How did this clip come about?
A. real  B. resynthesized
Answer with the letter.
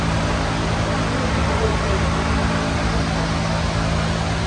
A